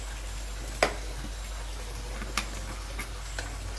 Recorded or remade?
recorded